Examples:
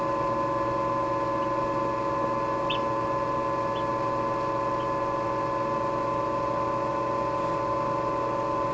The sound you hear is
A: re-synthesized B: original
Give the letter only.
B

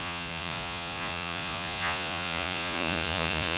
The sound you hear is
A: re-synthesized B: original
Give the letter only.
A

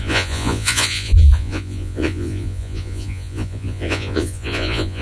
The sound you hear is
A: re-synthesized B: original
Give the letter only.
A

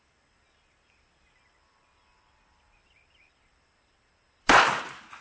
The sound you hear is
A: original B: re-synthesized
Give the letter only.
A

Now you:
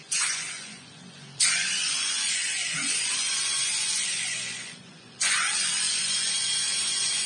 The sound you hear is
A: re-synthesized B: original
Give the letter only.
A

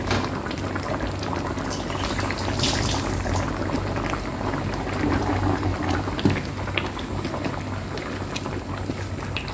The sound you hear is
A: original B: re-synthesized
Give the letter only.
A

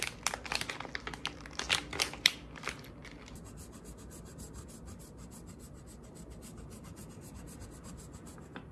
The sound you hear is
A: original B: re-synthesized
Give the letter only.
A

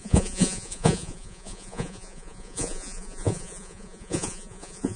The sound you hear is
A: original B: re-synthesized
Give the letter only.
B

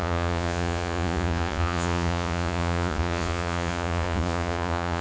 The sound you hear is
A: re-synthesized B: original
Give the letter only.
A